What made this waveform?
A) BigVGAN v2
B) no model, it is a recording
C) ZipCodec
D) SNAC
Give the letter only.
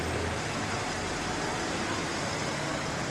B